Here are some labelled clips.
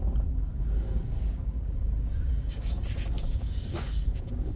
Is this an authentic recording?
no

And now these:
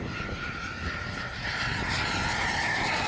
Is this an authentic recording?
yes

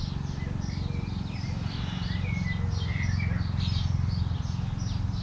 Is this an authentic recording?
yes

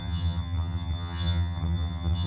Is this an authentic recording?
no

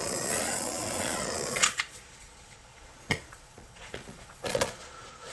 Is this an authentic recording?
no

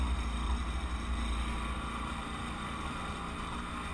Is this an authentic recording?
yes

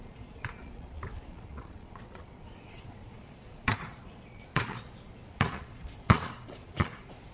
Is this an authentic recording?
no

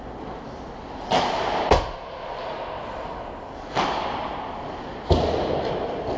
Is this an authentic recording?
yes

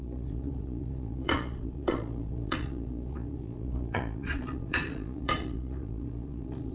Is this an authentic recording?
no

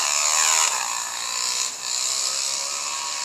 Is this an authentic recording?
yes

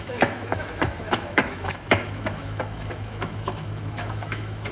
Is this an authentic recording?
no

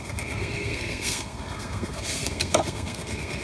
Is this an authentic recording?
no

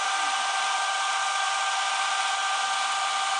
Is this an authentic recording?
yes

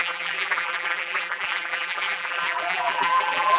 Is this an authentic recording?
no